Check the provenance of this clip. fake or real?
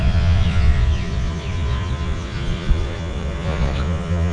fake